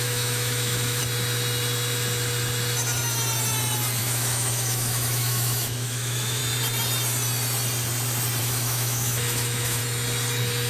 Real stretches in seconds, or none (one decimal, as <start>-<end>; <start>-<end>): 1.0-4.0; 6.4-8.4; 9.8-10.7